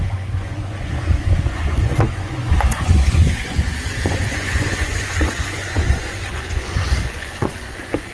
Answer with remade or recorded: remade